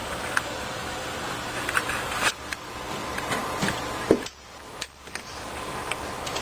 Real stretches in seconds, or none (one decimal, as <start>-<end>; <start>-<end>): 2.3-3.0